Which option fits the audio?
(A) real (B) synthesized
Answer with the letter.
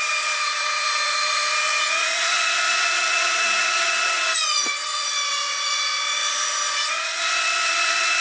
B